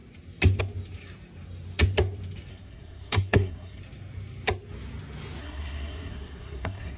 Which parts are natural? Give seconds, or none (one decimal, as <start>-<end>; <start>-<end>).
0.0-2.5; 3.8-5.4